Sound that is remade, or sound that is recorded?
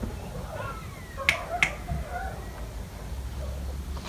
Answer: recorded